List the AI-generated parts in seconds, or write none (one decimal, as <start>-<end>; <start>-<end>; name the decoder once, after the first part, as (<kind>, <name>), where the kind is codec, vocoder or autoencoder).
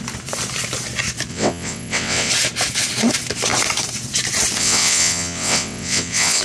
1.3-2.3 (vocoder, WaveNeXt); 4.6-6.4